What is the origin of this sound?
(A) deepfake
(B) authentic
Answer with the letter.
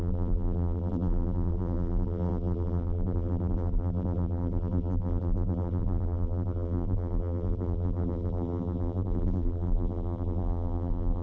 A